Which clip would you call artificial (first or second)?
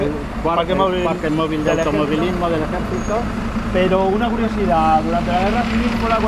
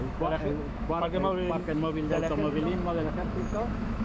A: second